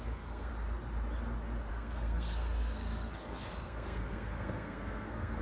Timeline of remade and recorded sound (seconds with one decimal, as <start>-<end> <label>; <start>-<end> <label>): 0.0-0.5 remade; 0.5-1.7 recorded; 1.7-5.4 remade

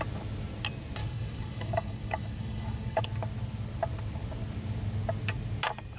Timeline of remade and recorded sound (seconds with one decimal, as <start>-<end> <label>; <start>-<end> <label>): 0.0-1.0 recorded; 1.0-3.0 remade; 3.0-6.0 recorded

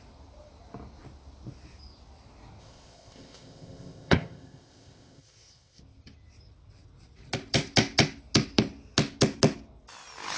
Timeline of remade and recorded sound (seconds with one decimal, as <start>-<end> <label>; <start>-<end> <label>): 0.0-2.6 recorded; 2.6-5.8 remade; 5.8-10.4 recorded

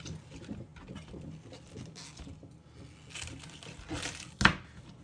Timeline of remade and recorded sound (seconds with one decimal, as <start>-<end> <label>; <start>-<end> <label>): 0.0-5.0 recorded

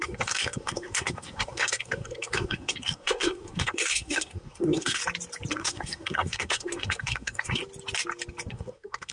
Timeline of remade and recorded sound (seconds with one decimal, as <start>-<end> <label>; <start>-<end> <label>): 0.0-5.0 remade; 5.0-5.5 recorded; 5.5-7.6 remade; 7.6-8.5 recorded; 8.5-9.1 remade

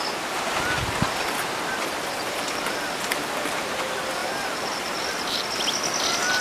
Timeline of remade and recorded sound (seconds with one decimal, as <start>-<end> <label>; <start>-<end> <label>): 0.0-4.2 recorded; 4.2-5.1 remade; 5.1-6.4 recorded

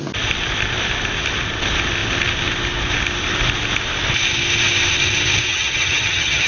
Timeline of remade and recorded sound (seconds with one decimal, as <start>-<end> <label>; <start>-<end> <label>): 0.0-5.5 recorded; 5.5-6.5 remade